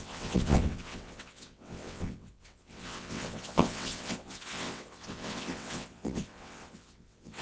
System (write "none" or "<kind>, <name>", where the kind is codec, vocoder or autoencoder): vocoder, WaveNeXt